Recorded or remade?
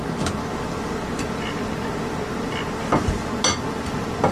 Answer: recorded